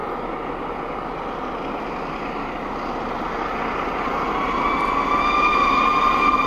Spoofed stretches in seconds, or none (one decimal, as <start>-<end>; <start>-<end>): none